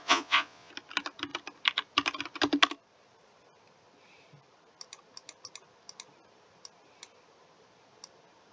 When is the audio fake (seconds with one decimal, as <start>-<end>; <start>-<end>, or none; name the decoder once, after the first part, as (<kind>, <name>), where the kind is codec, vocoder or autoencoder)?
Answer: 0.0-0.7 (vocoder, Vocos)